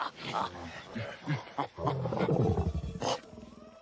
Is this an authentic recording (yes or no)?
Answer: yes